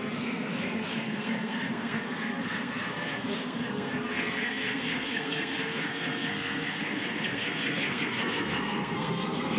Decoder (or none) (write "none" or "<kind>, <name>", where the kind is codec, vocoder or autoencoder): codec, SNAC